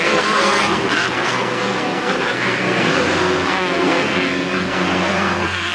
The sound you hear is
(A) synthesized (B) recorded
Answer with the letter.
A